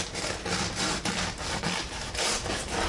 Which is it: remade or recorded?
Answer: recorded